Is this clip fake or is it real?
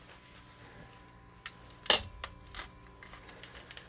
real